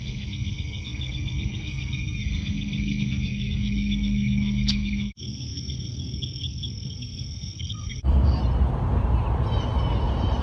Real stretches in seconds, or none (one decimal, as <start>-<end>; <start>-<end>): 8.4-10.4

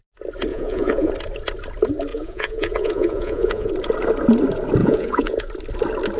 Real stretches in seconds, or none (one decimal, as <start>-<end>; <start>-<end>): 0.0-0.5; 1.1-2.1; 3.7-4.8; 5.5-6.2

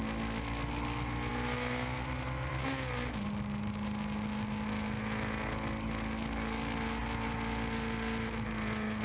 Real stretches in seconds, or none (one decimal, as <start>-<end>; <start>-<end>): 0.0-9.0